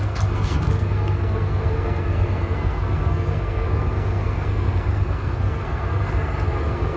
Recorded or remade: remade